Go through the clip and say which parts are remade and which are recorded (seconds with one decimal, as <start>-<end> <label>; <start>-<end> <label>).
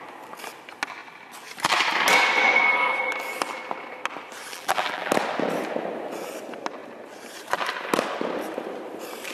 0.0-4.5 recorded; 4.5-5.1 remade; 5.1-9.3 recorded